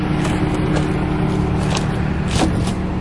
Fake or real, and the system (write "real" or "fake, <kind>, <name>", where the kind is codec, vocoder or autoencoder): real